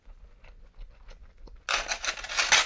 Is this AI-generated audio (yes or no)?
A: no